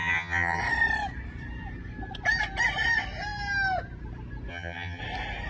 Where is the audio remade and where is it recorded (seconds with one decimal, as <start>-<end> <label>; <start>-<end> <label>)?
0.0-0.6 remade; 0.6-4.5 recorded; 4.5-5.0 remade; 5.0-5.5 recorded